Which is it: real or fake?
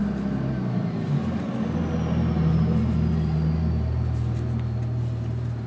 real